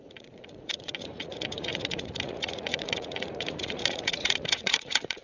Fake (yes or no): yes